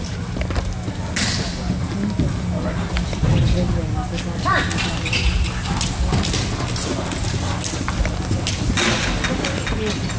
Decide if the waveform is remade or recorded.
recorded